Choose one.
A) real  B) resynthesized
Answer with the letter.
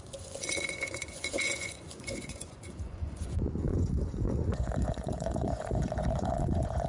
B